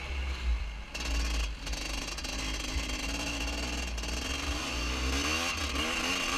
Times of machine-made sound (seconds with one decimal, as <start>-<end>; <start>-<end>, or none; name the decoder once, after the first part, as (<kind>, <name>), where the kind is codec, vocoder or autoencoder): none